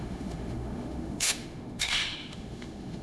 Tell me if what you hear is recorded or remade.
remade